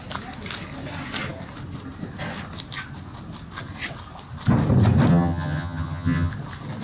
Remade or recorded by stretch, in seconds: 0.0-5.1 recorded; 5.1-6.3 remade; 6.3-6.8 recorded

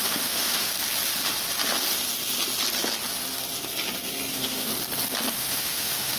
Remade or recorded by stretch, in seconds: 0.0-0.7 remade; 0.7-4.3 recorded; 4.3-4.7 remade; 4.7-5.3 recorded; 5.3-6.2 remade

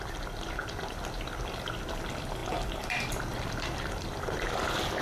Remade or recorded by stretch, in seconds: 0.0-2.4 recorded; 2.4-4.5 remade; 4.5-5.0 recorded

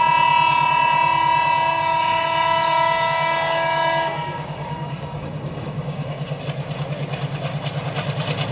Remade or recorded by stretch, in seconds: 0.0-1.7 recorded; 1.7-6.4 remade; 6.4-8.5 recorded

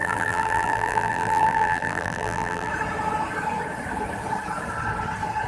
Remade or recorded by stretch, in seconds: 0.0-2.7 remade; 2.7-5.5 recorded